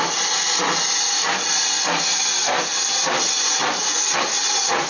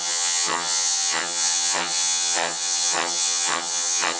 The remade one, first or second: second